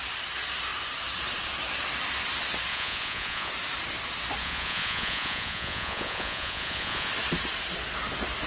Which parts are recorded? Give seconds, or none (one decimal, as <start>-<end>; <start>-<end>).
0.0-2.7; 3.5-4.4; 7.1-8.5